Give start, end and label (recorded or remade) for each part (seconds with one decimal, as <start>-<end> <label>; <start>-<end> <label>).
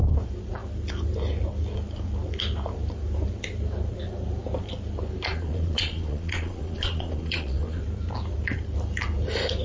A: 0.0-5.3 recorded; 5.3-7.8 remade; 7.8-9.6 recorded